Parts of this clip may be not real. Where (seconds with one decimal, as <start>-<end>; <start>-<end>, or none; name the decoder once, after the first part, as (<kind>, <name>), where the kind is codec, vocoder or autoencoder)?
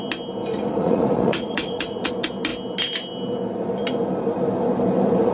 0.5-2.1 (vocoder, Vocos)